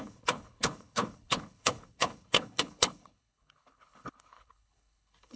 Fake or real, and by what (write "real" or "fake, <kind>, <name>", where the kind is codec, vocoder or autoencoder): fake, codec, HILCodec